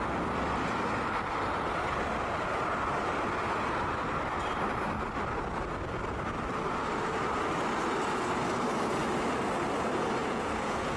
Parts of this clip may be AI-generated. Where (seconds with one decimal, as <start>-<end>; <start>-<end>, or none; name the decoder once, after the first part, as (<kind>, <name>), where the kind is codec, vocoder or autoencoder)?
10.2-11.0 (vocoder, Vocos)